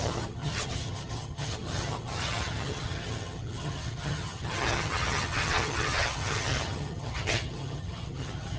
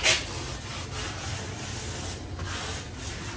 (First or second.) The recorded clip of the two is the second